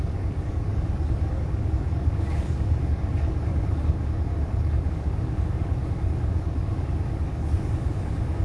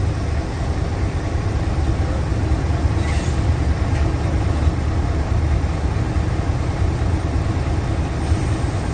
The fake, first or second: first